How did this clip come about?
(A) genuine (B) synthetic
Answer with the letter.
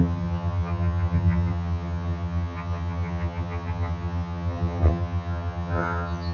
B